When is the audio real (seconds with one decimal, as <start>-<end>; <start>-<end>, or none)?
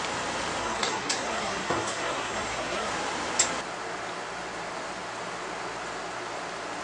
0.0-0.6; 2.9-6.8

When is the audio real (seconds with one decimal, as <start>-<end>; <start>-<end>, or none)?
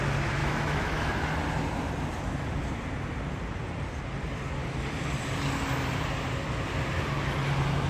0.0-0.4; 1.1-7.9